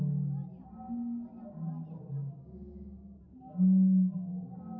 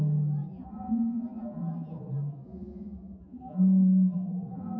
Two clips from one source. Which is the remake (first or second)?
second